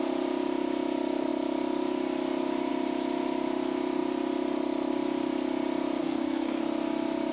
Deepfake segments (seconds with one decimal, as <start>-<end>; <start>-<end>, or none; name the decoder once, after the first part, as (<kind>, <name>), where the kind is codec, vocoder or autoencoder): 6.0-6.6 (codec, SNAC)